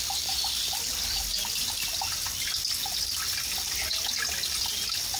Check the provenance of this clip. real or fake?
real